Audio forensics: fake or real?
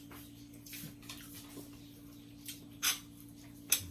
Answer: real